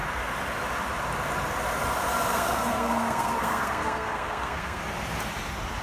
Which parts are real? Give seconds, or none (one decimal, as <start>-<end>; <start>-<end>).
0.0-2.3; 4.8-5.8